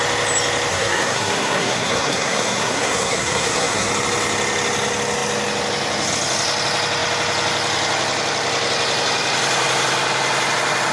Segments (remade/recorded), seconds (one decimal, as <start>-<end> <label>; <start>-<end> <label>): 0.0-0.7 recorded; 0.7-3.9 remade; 3.9-10.9 recorded

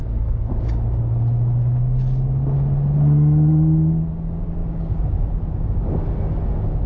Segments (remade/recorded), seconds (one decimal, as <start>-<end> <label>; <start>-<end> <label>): 0.0-0.5 remade; 0.5-6.9 recorded